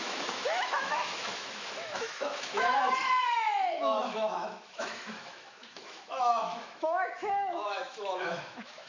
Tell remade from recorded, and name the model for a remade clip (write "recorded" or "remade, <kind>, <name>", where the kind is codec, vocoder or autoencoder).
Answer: remade, autoencoder, DAC-VAE